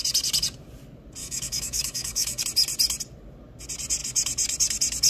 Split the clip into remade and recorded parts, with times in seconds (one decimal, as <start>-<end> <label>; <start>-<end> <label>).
0.0-1.2 recorded; 1.2-2.4 remade; 2.4-5.1 recorded